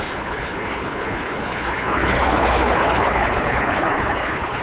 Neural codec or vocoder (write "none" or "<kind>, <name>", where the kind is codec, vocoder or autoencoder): codec, HILCodec